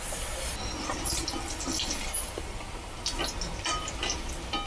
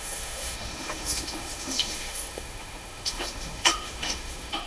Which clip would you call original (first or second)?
first